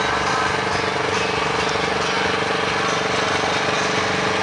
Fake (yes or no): no